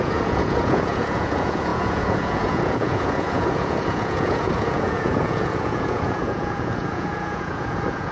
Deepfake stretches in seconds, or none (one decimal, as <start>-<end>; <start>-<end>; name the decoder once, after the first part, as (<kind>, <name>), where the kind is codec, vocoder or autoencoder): 0.0-8.1 (vocoder, Vocos)